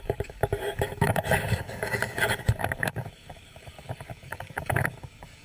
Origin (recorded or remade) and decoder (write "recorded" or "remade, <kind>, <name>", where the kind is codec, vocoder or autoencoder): remade, codec, DAC